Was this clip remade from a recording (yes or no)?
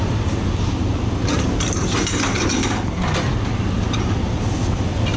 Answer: no